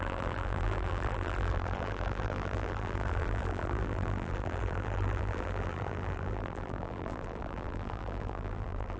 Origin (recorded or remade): remade